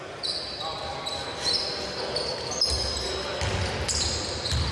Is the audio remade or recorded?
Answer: recorded